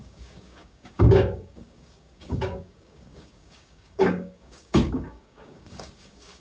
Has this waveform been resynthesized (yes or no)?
yes